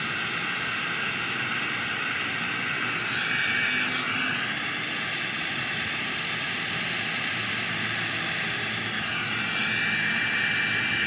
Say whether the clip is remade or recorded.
recorded